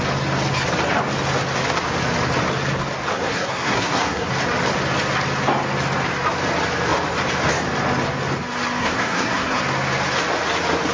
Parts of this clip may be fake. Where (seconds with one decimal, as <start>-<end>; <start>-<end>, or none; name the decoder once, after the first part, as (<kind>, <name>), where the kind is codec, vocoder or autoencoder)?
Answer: 3.1-4.3 (codec, SNAC); 8.8-9.6